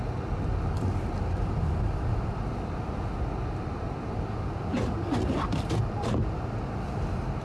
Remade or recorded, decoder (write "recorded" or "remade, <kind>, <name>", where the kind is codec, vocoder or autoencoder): recorded